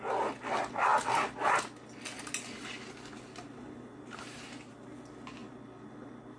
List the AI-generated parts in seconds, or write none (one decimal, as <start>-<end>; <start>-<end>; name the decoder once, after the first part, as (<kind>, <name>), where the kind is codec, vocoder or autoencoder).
none